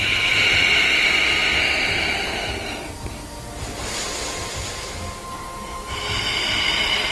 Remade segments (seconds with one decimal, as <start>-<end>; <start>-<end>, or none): none

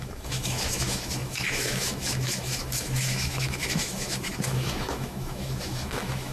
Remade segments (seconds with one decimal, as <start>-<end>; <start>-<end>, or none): 0.0-6.3